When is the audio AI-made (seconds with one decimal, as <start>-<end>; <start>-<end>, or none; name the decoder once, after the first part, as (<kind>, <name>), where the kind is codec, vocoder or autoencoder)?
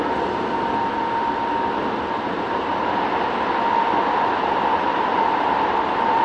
0.0-2.7 (vocoder, BigVGAN v2); 4.8-6.2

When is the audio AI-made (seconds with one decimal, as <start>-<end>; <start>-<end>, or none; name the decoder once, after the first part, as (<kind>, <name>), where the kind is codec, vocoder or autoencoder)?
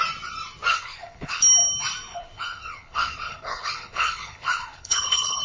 0.7-1.4 (codec, HILCodec); 2.1-5.4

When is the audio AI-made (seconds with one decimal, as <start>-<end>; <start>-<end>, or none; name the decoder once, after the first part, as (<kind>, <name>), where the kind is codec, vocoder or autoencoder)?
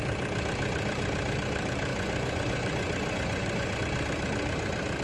1.9-3.8 (vocoder, Vocos)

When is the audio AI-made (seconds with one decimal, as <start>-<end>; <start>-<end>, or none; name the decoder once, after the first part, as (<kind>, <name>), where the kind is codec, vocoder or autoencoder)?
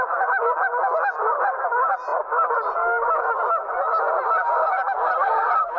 none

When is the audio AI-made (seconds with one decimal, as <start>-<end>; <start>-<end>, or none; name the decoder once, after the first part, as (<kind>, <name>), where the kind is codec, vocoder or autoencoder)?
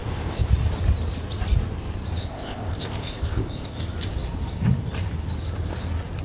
0.0-0.5 (codec, ZipCodec); 2.2-3.8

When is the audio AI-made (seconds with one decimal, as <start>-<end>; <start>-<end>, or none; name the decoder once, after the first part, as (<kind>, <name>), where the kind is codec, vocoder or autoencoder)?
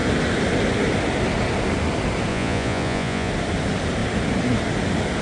2.3-3.3 (vocoder, Vocos)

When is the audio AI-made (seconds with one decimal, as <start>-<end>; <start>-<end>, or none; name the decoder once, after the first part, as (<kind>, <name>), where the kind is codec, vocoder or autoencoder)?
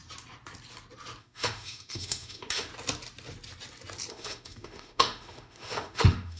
1.2-2.7 (autoencoder, DAC-VAE); 4.1-6.4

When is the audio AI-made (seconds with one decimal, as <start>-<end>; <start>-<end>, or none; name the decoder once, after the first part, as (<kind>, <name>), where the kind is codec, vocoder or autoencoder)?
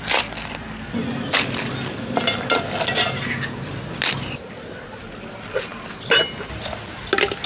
none